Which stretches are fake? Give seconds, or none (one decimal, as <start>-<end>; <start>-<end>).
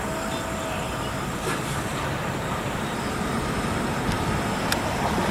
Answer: 1.9-5.3